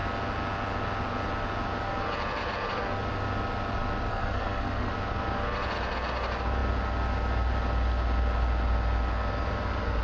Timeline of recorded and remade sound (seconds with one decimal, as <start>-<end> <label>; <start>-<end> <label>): 0.0-4.1 recorded; 4.1-4.9 remade; 4.9-10.0 recorded